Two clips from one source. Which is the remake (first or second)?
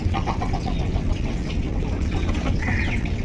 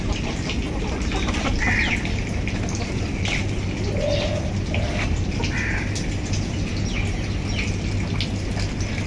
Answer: first